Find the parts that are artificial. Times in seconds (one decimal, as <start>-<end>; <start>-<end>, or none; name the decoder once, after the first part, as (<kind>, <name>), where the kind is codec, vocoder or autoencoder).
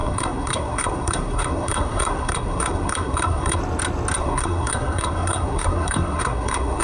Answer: 0.0-3.6 (codec, SNAC); 4.2-6.8